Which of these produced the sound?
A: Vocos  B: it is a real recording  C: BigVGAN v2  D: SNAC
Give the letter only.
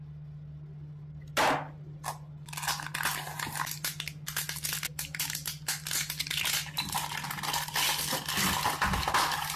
B